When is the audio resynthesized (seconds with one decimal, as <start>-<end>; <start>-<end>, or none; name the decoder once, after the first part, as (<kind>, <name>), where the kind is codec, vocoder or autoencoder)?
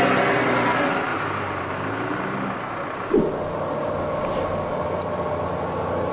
none